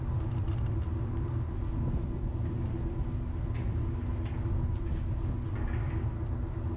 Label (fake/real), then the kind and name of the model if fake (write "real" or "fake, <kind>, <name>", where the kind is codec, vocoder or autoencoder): real